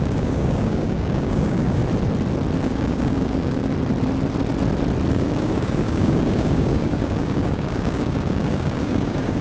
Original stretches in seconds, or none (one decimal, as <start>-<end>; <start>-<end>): 1.8-2.6; 3.7-5.1